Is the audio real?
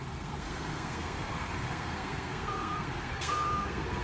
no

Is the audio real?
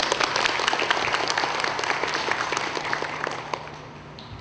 yes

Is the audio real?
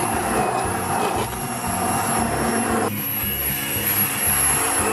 yes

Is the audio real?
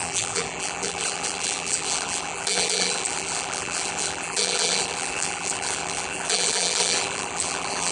no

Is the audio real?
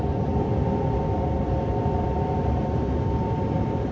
yes